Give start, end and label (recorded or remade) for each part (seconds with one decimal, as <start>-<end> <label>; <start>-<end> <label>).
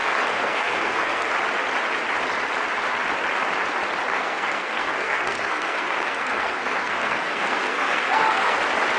0.0-1.3 remade; 1.3-4.1 recorded; 4.1-8.6 remade; 8.6-9.0 recorded